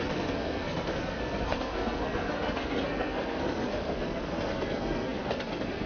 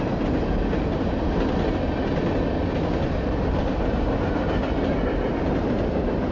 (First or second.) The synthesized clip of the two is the first